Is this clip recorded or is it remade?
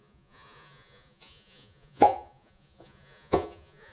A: remade